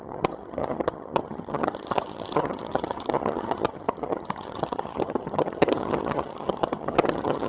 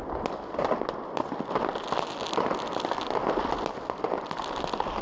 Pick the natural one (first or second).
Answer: second